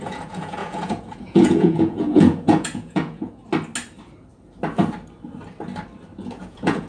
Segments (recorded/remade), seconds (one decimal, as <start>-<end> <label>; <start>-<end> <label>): 0.0-3.4 remade; 3.4-6.4 recorded; 6.4-6.9 remade